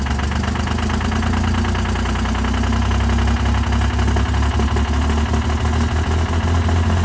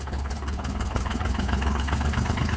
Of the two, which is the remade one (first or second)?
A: second